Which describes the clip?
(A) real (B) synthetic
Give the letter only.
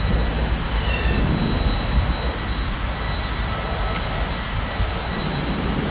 A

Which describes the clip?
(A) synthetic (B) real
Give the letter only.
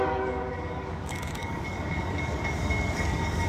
A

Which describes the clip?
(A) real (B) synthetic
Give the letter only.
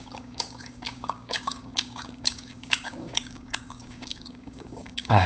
B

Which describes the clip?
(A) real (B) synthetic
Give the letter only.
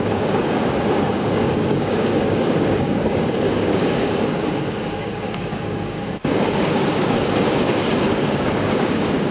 B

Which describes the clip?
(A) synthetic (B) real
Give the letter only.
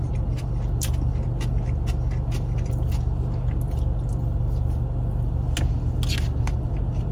B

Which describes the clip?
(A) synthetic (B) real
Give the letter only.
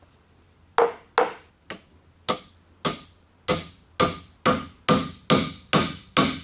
B